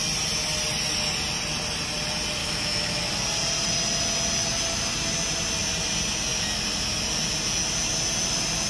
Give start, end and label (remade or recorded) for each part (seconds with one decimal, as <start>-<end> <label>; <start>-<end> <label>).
0.0-2.4 recorded; 2.4-3.0 remade; 3.0-8.7 recorded